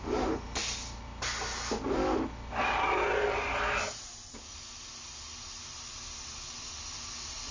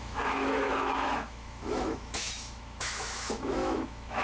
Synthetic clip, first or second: second